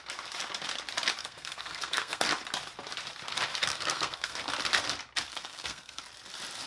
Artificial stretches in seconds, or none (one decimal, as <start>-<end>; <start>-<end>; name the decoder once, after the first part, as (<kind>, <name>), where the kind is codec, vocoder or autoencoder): 1.2-2.2 (codec, SNAC); 3.7-4.4; 5.3-6.0